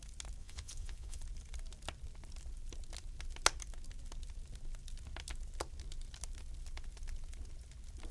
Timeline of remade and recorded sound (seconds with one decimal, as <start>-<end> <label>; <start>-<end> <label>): 0.0-0.4 recorded; 0.4-1.2 remade; 1.2-8.1 recorded